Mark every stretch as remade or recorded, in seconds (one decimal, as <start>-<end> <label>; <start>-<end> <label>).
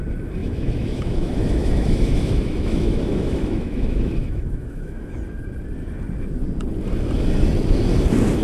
0.0-0.4 recorded; 0.4-5.1 remade; 5.1-8.4 recorded